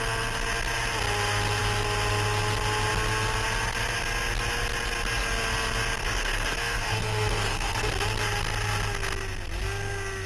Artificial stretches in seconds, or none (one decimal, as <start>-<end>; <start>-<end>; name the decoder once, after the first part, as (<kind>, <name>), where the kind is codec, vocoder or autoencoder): 6.0-7.9 (codec, SNAC)